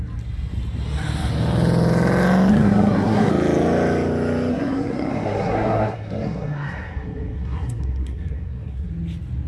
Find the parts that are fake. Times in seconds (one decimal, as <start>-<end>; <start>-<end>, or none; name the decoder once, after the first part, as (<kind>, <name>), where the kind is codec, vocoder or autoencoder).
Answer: 2.5-3.3 (codec, SNAC); 4.5-8.9